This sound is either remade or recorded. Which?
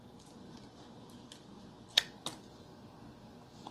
recorded